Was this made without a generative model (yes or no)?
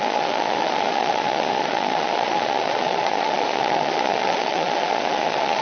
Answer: no